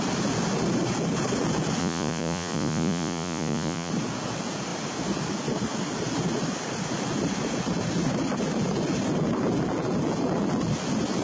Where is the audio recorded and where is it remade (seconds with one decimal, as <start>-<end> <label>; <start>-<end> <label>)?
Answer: 0.0-1.8 recorded; 1.8-3.9 remade; 3.9-11.2 recorded